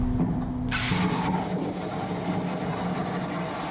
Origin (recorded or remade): recorded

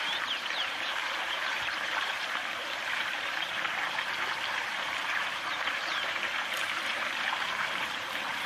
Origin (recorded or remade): remade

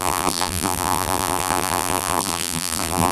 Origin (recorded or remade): remade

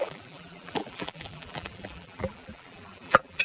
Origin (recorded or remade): remade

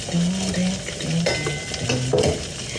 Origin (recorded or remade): recorded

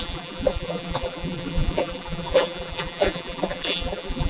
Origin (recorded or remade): remade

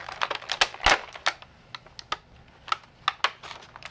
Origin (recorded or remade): recorded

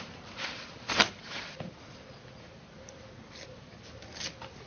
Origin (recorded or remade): remade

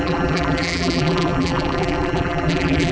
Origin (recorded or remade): remade